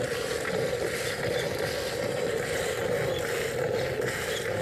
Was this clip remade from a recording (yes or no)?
no